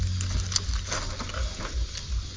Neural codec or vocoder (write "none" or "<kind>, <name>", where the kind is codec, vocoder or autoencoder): none